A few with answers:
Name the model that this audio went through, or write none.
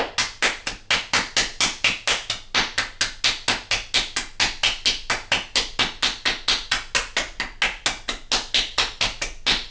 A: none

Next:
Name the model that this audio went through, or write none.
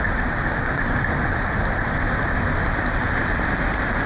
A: none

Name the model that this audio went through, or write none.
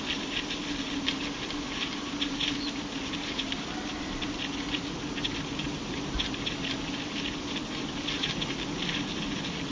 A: none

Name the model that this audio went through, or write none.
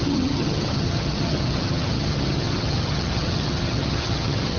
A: vocoder, HiFi-GAN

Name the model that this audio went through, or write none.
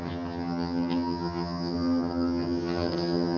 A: vocoder, HiFi-GAN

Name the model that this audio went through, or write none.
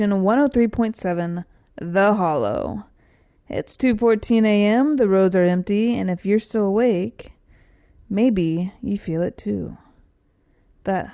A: none